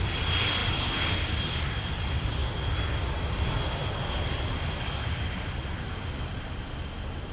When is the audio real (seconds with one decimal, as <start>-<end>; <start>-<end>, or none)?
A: 0.0-7.3